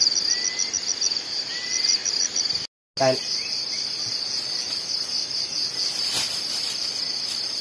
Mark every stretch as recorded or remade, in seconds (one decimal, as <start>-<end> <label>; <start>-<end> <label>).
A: 0.0-7.6 recorded